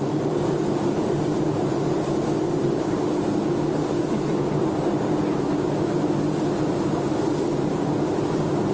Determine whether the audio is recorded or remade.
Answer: recorded